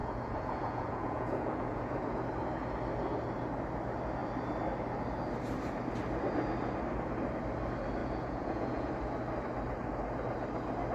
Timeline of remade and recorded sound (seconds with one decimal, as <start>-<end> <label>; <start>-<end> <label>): 0.0-2.2 remade; 2.2-8.0 recorded; 8.0-8.9 remade; 8.9-10.9 recorded